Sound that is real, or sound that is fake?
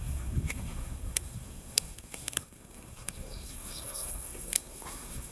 fake